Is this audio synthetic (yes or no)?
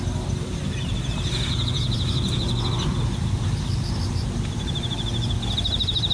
yes